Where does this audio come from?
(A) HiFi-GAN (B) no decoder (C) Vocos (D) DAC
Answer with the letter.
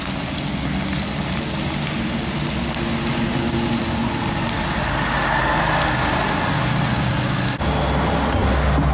B